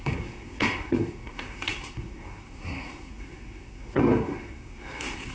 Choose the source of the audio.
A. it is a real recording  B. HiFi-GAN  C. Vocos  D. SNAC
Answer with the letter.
D